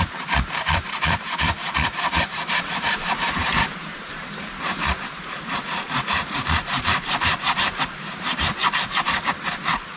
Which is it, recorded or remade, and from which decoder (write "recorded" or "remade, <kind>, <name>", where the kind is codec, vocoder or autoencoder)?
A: remade, vocoder, BigVGAN v2